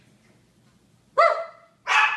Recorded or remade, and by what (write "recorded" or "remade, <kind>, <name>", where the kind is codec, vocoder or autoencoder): remade, vocoder, BigVGAN v2